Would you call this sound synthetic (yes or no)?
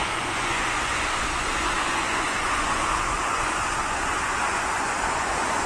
yes